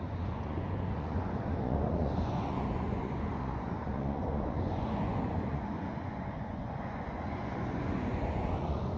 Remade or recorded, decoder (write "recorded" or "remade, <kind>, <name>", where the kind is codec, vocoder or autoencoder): remade, vocoder, Vocos